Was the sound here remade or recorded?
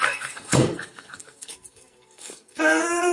remade